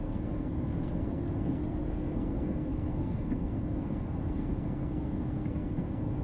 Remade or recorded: remade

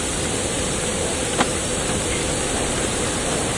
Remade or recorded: remade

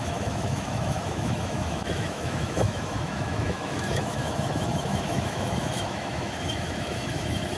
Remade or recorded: remade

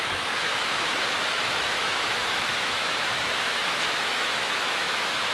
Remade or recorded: remade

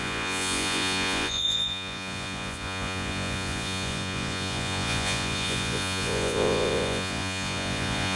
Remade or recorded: remade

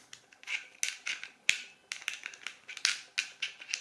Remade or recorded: recorded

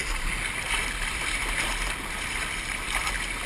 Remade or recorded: recorded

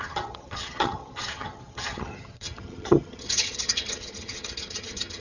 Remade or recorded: remade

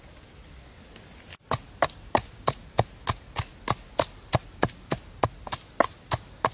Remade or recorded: recorded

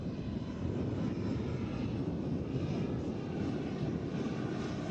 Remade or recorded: recorded